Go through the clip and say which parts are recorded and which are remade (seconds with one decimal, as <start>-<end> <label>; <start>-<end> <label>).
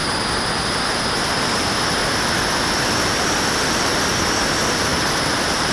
0.0-4.9 recorded; 4.9-5.7 remade